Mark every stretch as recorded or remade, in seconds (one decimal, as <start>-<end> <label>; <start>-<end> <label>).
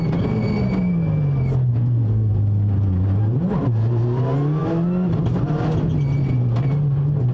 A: 0.0-1.7 recorded; 1.7-2.3 remade; 2.3-7.3 recorded